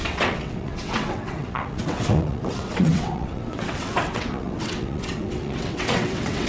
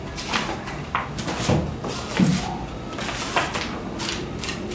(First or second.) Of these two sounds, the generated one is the first